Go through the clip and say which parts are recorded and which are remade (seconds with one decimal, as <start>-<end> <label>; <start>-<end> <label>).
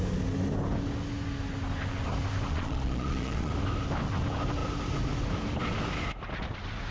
0.0-2.5 recorded; 2.5-3.5 remade; 3.5-6.9 recorded